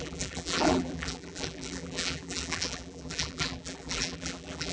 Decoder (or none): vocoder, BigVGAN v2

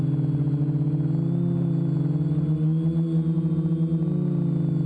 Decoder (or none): none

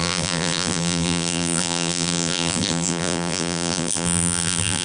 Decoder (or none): vocoder, BigVGAN v2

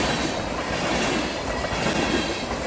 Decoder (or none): none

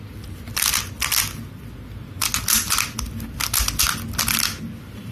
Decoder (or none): none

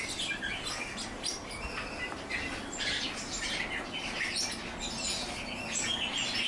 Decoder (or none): none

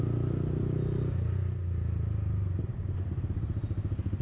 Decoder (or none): none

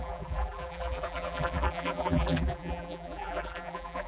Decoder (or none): vocoder, BigVGAN v2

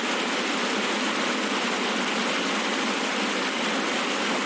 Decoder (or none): none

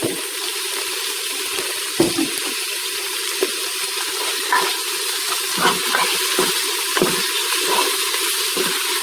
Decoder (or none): vocoder, BigVGAN v2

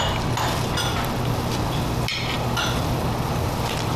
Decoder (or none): none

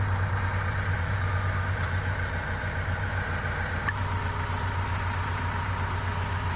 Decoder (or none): vocoder, BigVGAN v2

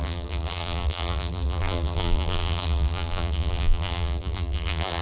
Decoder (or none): vocoder, BigVGAN v2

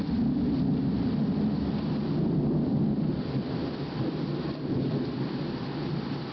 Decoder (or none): vocoder, BigVGAN v2